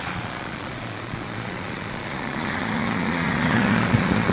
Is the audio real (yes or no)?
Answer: no